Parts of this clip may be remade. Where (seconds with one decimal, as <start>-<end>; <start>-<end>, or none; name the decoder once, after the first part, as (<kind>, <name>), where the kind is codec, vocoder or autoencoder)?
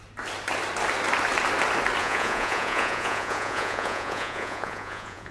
2.0-5.3 (vocoder, Vocos)